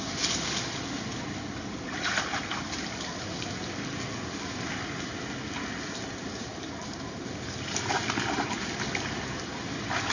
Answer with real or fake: real